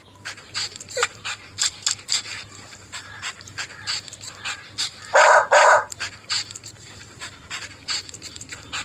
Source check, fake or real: fake